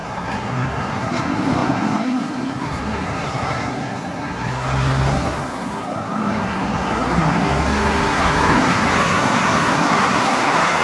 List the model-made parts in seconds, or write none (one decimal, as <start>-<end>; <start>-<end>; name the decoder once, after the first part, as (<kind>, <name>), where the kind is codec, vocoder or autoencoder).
0.0-10.8 (codec, SNAC)